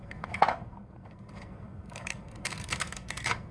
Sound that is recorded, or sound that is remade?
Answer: remade